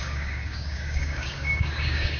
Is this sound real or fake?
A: fake